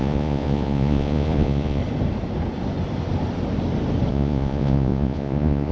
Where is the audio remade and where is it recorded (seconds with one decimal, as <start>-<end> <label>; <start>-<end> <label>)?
0.0-1.8 remade; 1.8-4.1 recorded; 4.1-5.7 remade